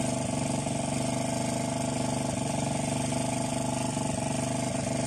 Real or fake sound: real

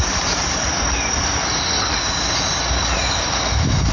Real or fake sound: real